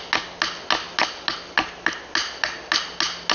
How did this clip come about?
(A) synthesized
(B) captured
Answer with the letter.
B